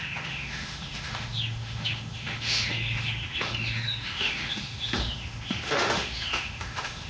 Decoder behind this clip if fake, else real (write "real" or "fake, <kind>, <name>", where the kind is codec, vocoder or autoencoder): fake, autoencoder, DAC-VAE